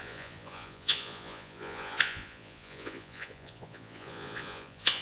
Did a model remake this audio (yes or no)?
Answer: yes